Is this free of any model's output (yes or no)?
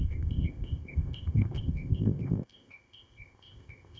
no